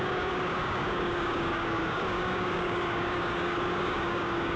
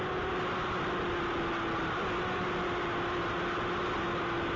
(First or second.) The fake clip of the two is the first